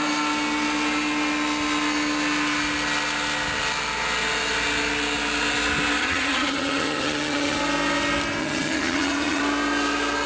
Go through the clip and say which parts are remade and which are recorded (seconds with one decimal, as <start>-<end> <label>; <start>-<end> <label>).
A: 0.0-6.0 recorded; 6.0-7.6 remade; 7.6-8.4 recorded; 8.4-9.4 remade; 9.4-10.3 recorded